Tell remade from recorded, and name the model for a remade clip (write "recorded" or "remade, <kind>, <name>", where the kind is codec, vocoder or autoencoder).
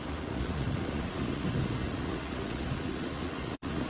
remade, vocoder, Vocos